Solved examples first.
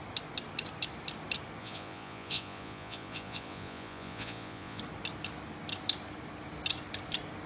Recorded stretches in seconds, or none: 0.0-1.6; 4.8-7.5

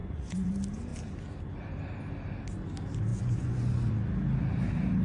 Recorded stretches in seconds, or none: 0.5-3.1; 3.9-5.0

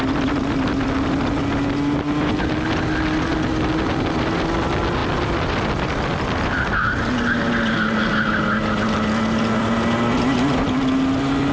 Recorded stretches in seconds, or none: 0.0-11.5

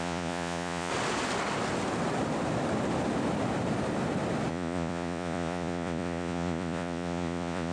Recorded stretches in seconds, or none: 0.9-4.5